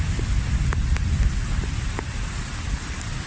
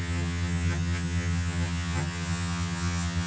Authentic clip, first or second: first